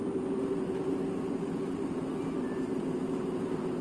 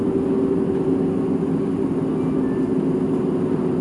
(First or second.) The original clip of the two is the second